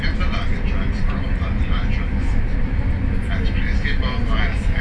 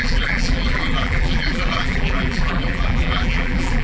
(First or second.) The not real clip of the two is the second